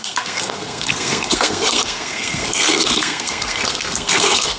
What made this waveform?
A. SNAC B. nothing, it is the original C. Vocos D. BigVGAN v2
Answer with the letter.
A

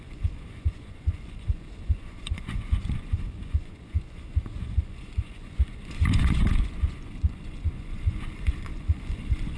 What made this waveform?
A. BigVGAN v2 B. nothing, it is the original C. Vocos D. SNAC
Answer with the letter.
C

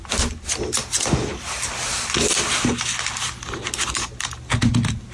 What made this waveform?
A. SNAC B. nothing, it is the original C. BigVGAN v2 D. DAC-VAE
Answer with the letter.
B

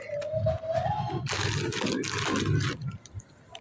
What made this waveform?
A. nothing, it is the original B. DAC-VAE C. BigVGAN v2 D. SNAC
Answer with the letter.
A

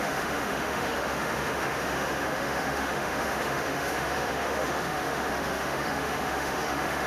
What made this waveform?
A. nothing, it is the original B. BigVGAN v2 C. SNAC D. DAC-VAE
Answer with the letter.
D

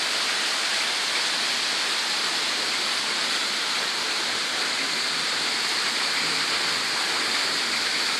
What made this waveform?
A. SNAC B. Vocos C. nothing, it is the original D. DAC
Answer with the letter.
C